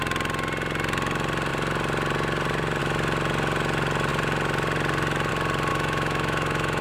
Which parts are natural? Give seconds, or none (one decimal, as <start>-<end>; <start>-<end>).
0.0-5.7